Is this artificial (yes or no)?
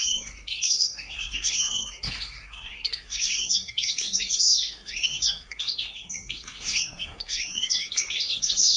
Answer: yes